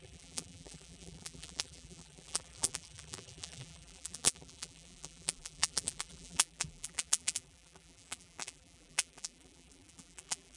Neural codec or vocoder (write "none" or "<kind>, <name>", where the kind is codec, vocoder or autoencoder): vocoder, BigVGAN v2